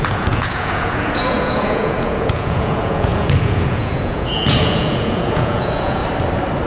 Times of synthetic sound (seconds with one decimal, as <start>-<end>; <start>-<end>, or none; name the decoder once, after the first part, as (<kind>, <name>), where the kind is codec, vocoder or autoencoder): 0.0-6.0 (vocoder, Vocos)